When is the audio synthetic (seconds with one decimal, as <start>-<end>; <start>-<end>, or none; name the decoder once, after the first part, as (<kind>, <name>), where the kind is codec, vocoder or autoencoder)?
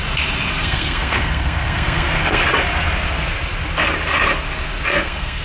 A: 0.5-2.4 (codec, SNAC); 4.9-5.4